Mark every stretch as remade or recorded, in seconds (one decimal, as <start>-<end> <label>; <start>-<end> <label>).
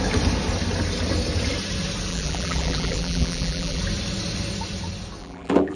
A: 0.0-2.1 recorded; 2.1-3.8 remade; 3.8-5.2 recorded; 5.2-5.8 remade